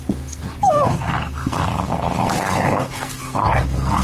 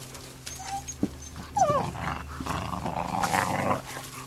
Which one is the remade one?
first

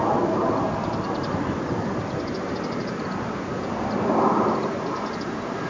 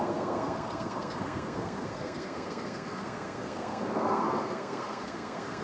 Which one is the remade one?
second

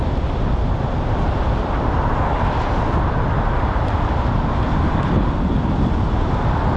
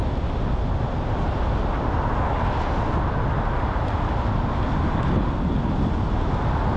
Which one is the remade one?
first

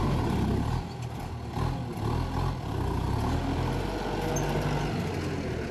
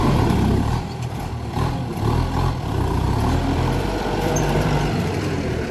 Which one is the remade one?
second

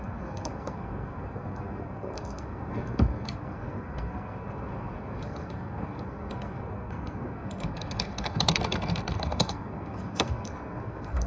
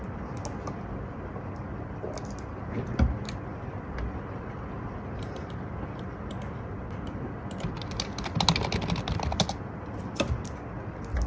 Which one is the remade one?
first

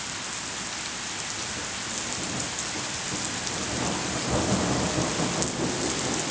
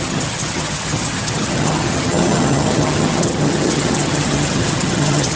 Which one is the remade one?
second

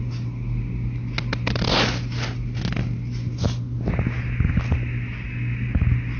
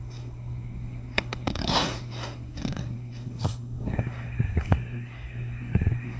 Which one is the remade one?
second